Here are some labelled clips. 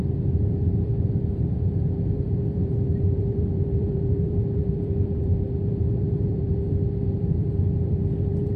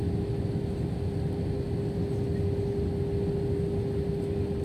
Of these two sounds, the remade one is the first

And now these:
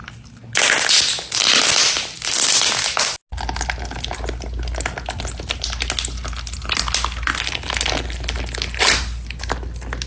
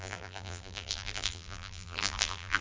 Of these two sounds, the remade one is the second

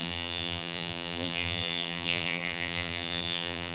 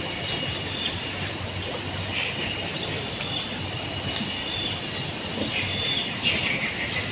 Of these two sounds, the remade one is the first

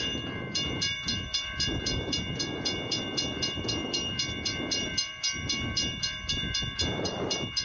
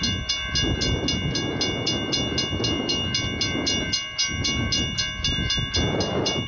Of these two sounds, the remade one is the first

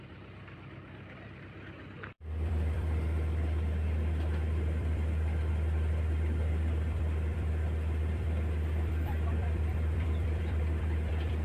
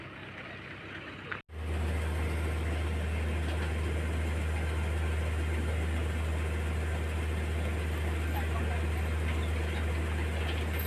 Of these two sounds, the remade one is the first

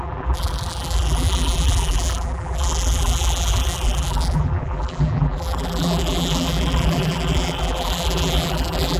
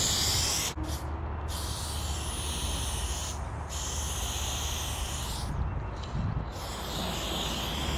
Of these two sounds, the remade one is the first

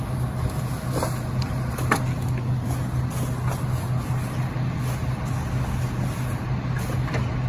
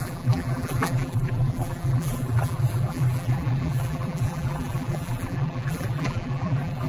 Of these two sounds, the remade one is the second